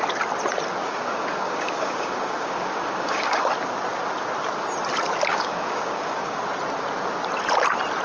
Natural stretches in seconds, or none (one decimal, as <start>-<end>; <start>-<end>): 0.0-0.8; 3.5-5.3; 6.4-8.0